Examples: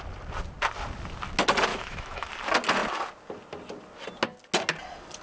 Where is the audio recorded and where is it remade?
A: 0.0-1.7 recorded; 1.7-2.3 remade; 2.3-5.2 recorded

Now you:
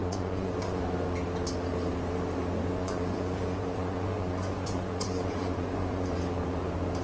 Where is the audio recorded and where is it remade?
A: 0.0-0.8 remade; 0.8-2.7 recorded; 2.7-6.1 remade; 6.1-7.0 recorded

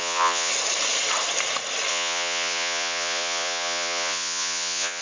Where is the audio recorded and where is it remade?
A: 0.0-0.5 remade; 0.5-1.9 recorded; 1.9-5.0 remade

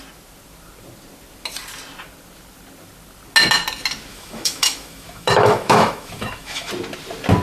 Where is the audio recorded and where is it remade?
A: 0.0-4.1 recorded; 4.1-6.7 remade; 6.7-7.4 recorded

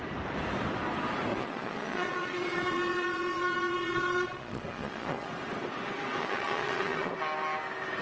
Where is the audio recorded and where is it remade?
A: 0.0-1.3 recorded; 1.3-5.3 remade; 5.3-6.2 recorded; 6.2-7.1 remade; 7.1-8.0 recorded

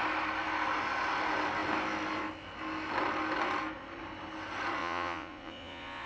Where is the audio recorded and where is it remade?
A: 0.0-4.8 recorded; 4.8-6.1 remade

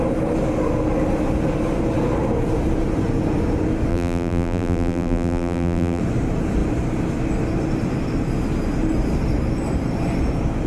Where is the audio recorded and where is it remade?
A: 0.0-3.9 recorded; 3.9-6.0 remade; 6.0-10.7 recorded